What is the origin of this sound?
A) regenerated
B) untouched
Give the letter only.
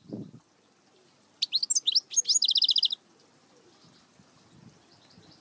B